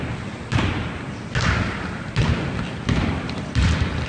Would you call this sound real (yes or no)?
yes